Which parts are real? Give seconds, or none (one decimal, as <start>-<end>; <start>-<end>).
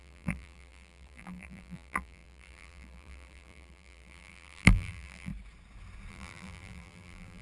5.3-6.1